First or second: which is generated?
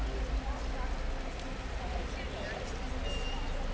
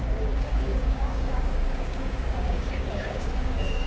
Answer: second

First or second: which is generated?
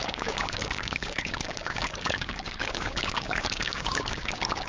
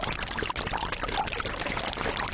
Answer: first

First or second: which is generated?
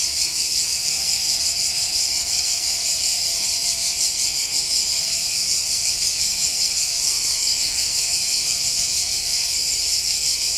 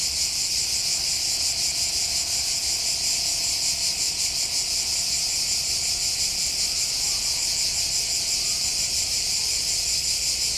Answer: first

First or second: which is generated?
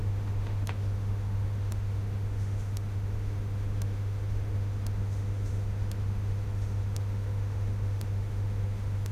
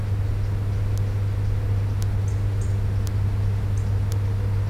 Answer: first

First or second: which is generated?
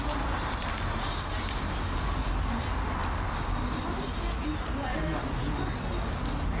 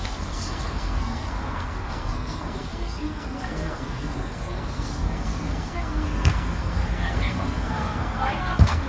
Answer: second